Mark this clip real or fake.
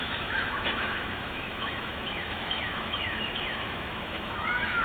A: fake